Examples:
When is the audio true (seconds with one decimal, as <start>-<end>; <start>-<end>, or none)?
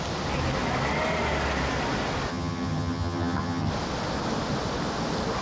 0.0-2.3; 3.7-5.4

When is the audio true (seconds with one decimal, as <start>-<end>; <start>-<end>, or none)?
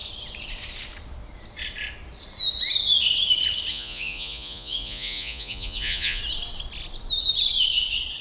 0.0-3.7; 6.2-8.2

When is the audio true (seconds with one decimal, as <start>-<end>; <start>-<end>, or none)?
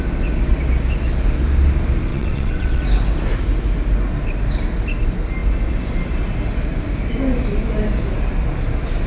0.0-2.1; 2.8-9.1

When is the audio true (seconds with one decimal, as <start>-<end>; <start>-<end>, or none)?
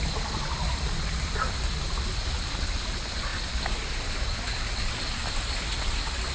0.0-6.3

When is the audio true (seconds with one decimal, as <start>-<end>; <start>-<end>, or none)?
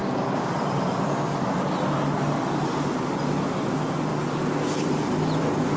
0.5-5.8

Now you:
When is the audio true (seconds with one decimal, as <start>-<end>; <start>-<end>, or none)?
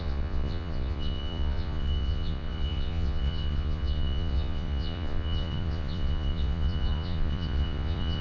none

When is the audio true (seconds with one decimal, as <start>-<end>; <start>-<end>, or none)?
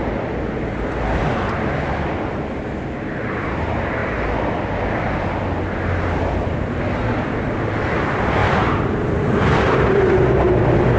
0.0-8.4; 10.2-11.0